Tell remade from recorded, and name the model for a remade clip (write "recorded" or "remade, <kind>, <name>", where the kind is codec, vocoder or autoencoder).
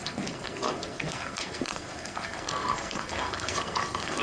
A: remade, codec, SNAC